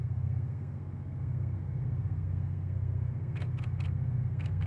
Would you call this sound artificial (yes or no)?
yes